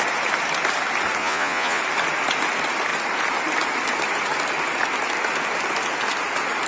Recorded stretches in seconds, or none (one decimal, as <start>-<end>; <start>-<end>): 0.0-1.2; 1.8-6.7

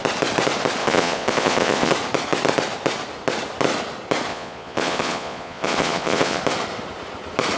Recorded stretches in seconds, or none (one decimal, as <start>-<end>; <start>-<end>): 0.0-0.8; 1.9-4.3; 6.4-7.6

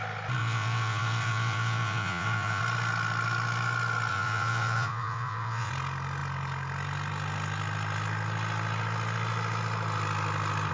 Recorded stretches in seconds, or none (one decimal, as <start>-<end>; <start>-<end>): 0.0-0.4; 2.6-4.1; 5.7-10.7

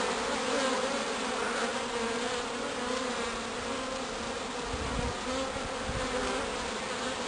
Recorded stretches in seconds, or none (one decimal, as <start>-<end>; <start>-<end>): 0.0-7.3

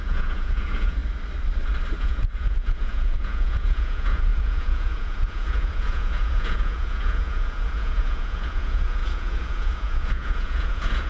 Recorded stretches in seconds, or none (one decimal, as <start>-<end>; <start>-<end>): 1.0-2.0